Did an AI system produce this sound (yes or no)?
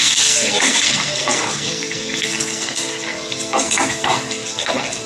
yes